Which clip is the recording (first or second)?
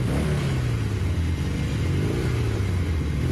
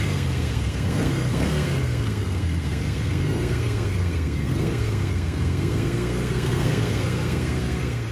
first